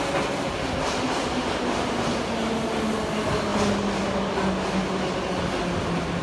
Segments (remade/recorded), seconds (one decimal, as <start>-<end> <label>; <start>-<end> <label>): 0.0-6.2 recorded